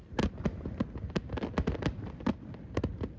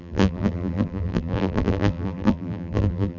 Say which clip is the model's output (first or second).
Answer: second